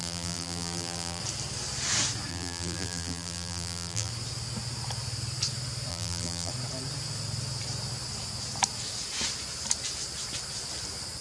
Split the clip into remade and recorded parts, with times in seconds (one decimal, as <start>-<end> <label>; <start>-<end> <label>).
0.0-1.2 remade; 1.2-2.3 recorded; 2.3-4.1 remade; 4.1-5.9 recorded; 5.9-6.5 remade; 6.5-11.2 recorded